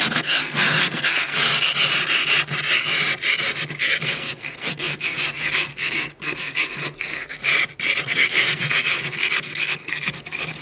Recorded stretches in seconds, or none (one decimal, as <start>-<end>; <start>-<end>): 1.7-3.8; 7.5-8.0